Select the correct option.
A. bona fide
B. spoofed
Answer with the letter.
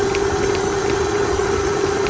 A